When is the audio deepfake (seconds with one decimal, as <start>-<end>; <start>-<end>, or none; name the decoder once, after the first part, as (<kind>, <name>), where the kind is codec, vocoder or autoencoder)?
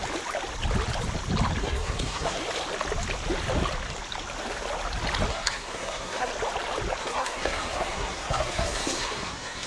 1.6-2.4 (codec, SNAC); 5.3-6.3; 7.0-9.7